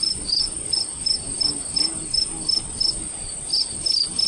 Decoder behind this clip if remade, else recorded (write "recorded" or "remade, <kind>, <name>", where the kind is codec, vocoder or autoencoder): recorded